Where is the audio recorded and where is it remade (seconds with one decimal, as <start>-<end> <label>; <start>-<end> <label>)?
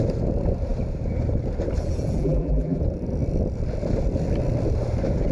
0.0-2.2 recorded; 2.2-2.8 remade; 2.8-5.3 recorded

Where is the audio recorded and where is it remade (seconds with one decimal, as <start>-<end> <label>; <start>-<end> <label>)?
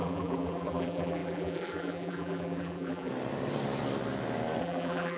0.0-3.1 remade; 3.1-4.6 recorded; 4.6-5.2 remade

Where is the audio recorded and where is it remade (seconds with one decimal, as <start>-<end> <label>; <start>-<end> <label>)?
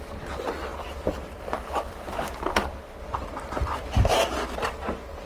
0.0-0.7 recorded; 0.7-3.9 remade; 3.9-5.3 recorded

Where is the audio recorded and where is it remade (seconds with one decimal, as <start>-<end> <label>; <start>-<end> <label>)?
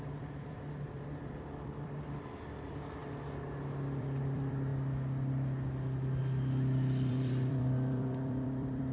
0.0-3.0 remade; 3.0-4.0 recorded; 4.0-4.7 remade; 4.7-7.1 recorded; 7.1-8.9 remade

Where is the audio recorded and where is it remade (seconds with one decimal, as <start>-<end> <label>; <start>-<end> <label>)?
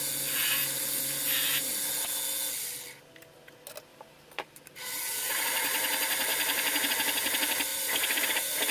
0.0-3.9 recorded; 3.9-5.4 remade; 5.4-6.3 recorded; 6.3-6.9 remade; 6.9-7.7 recorded; 7.7-8.7 remade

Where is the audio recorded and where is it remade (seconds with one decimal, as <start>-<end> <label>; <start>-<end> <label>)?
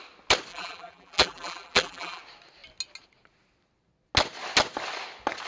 0.0-0.5 recorded; 0.5-2.2 remade; 2.2-5.5 recorded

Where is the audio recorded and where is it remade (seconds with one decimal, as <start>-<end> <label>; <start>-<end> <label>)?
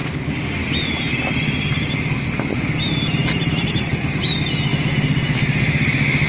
0.0-2.5 recorded; 2.5-4.2 remade; 4.2-6.3 recorded